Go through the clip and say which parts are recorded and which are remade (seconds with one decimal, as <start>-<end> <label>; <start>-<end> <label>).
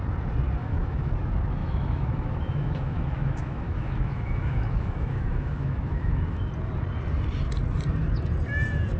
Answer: 0.0-0.6 recorded; 0.6-1.1 remade; 1.1-1.6 recorded; 1.6-6.5 remade; 6.5-9.0 recorded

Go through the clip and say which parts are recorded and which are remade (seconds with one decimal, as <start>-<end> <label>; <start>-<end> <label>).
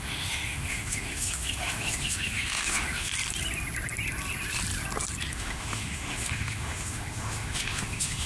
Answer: 0.0-3.1 remade; 3.1-5.3 recorded; 5.3-8.3 remade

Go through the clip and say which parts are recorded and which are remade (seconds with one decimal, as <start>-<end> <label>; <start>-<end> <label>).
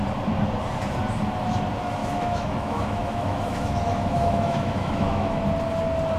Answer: 0.0-2.0 recorded; 2.0-5.4 remade; 5.4-6.2 recorded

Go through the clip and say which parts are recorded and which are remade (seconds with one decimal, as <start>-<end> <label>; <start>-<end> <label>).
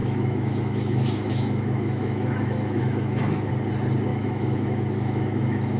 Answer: 0.0-3.5 remade; 3.5-4.1 recorded; 4.1-5.8 remade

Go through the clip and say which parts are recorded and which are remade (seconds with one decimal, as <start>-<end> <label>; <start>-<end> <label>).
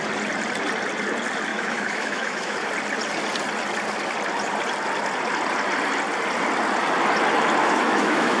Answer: 0.0-1.5 recorded; 1.5-2.7 remade; 2.7-7.6 recorded; 7.6-8.4 remade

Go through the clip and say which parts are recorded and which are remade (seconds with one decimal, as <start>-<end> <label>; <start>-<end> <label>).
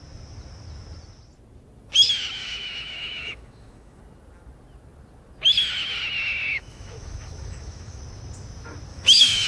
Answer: 0.0-2.4 recorded; 2.4-4.0 remade; 4.0-6.5 recorded; 6.5-8.0 remade; 8.0-8.9 recorded; 8.9-9.5 remade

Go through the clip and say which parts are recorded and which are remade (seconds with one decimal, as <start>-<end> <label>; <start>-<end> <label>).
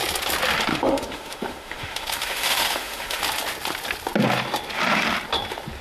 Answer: 0.0-0.7 recorded; 0.7-3.2 remade; 3.2-5.8 recorded